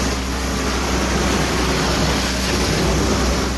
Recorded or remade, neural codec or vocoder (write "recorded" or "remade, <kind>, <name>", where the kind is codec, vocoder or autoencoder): recorded